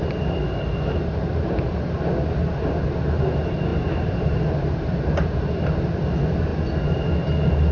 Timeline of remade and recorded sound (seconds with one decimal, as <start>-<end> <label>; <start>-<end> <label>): 0.0-3.7 recorded; 3.7-5.6 remade; 5.6-7.7 recorded